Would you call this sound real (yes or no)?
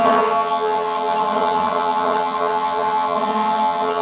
no